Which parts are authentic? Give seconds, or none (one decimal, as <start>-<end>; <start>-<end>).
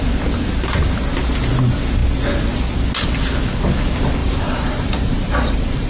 0.0-4.2